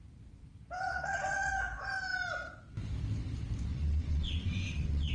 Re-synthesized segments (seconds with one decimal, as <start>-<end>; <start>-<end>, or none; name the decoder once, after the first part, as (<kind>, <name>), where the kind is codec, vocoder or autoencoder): 0.9-1.5 (vocoder, WaveNeXt); 3.7-5.1

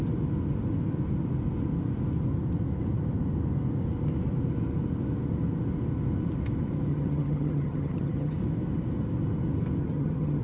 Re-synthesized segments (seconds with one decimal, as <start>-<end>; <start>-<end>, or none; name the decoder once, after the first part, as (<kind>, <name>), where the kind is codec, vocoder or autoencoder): 6.9-8.4 (vocoder, HiFi-GAN); 9.8-10.4

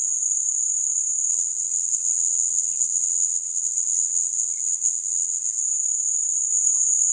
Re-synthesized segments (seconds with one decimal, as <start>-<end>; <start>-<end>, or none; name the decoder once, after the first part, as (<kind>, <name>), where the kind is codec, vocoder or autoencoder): 1.3-5.6 (vocoder, WaveNeXt)